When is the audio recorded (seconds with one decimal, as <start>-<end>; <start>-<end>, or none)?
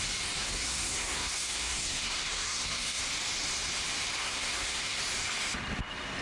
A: 0.0-0.4; 3.0-4.2; 5.0-6.2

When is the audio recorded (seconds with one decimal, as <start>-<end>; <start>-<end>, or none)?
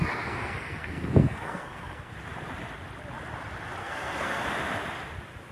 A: 2.1-3.8; 4.4-5.5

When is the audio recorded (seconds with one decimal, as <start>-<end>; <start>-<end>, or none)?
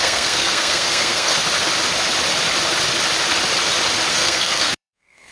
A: 1.3-4.1